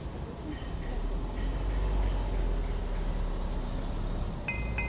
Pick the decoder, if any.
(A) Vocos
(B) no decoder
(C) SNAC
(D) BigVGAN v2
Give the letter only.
B